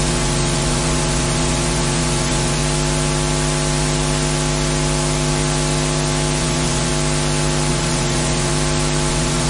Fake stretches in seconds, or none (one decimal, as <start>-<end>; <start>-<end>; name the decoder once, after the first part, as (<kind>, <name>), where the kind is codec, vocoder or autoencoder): 0.0-2.6 (vocoder, Vocos); 6.4-6.9; 7.7-8.5; 9.1-9.5